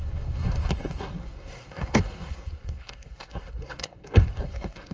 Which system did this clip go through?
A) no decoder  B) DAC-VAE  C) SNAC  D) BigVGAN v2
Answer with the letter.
C